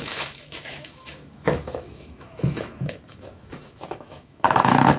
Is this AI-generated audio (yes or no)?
yes